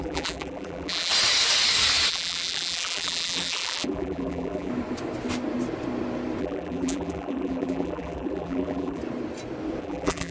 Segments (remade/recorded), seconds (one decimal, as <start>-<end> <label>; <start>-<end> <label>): 0.0-1.1 remade; 1.1-2.1 recorded; 2.1-4.7 remade; 4.7-6.4 recorded; 6.4-9.0 remade; 9.0-9.8 recorded; 9.8-10.3 remade